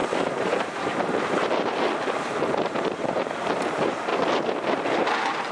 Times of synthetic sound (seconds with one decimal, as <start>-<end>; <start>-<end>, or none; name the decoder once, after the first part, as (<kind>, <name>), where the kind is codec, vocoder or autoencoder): 0.0-4.1 (vocoder, BigVGAN v2); 4.9-5.5